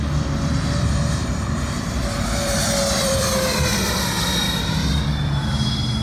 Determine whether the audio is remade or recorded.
remade